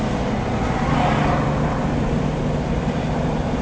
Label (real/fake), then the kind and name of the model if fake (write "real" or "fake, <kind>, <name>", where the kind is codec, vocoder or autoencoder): real